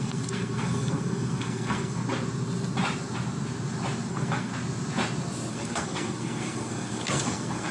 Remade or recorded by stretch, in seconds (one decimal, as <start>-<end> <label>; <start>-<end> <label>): 0.0-2.0 remade; 2.0-4.1 recorded; 4.1-4.5 remade; 4.5-5.5 recorded; 5.5-7.7 remade